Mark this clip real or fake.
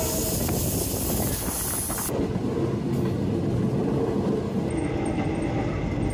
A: real